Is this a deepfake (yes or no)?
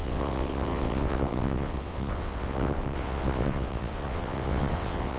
yes